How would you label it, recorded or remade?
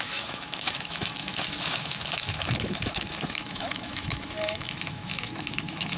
remade